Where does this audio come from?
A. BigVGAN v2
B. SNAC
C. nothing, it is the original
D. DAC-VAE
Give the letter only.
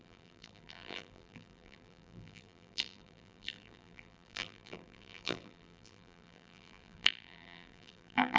A